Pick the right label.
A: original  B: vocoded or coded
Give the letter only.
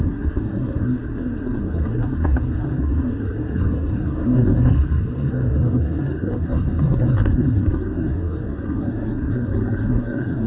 B